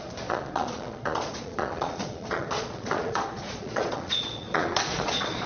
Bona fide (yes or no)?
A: no